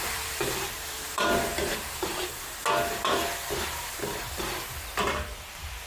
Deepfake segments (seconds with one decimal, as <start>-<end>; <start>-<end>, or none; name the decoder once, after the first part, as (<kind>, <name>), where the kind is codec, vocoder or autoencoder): 0.0-1.5 (vocoder, BigVGAN v2); 5.0-5.9